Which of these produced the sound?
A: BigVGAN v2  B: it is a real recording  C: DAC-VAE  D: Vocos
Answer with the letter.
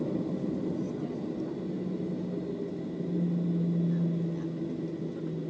B